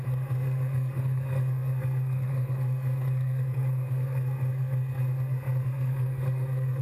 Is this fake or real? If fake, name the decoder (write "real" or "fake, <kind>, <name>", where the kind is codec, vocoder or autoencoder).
fake, codec, SNAC